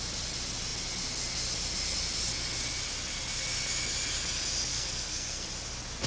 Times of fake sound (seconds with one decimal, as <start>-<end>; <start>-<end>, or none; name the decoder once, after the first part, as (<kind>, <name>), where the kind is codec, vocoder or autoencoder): 4.7-5.5 (codec, SNAC)